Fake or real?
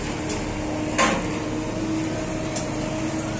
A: real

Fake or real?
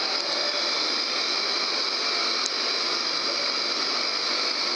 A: real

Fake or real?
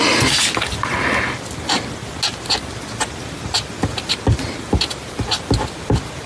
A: real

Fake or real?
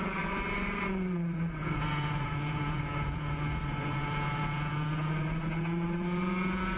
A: fake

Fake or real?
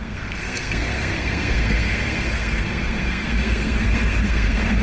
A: fake